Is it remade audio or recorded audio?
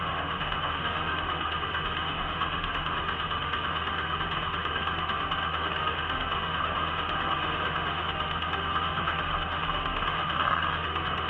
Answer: remade